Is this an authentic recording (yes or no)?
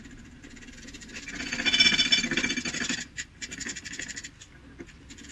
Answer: no